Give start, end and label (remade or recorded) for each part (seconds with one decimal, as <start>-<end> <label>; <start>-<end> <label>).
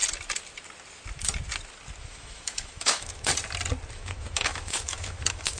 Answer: 0.0-2.0 recorded; 2.0-3.3 remade; 3.3-3.9 recorded; 3.9-5.6 remade